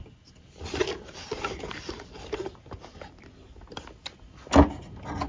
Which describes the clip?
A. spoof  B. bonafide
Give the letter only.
B